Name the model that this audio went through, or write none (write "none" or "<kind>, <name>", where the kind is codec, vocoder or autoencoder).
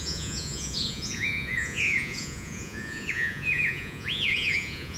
vocoder, Vocos